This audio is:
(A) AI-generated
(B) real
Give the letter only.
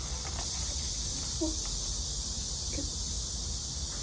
B